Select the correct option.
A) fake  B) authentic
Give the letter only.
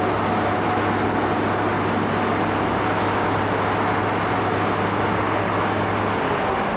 B